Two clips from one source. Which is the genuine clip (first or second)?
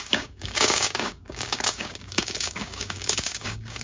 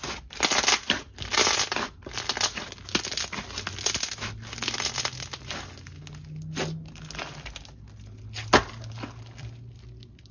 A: second